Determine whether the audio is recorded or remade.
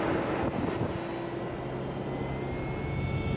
recorded